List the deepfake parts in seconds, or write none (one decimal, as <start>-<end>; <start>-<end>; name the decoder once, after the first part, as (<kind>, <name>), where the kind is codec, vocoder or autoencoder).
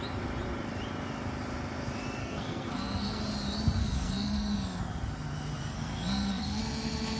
2.2-3.2 (codec, SNAC); 3.8-4.8; 5.6-6.6